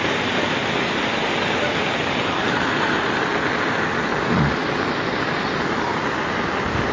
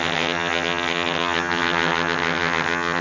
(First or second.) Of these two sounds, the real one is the first